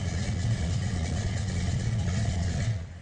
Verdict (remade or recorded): remade